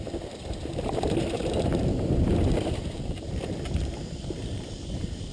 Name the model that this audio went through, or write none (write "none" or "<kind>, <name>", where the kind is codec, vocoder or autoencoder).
vocoder, BigVGAN v2